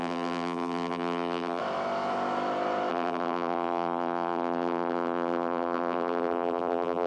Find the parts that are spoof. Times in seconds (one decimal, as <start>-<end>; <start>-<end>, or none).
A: 0.0-1.6; 2.9-7.1